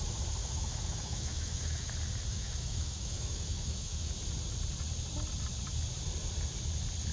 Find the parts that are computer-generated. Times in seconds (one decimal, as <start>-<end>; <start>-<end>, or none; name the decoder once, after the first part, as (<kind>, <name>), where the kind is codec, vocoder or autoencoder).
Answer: 0.4-1.9 (autoencoder, DAC-VAE); 2.3-4.1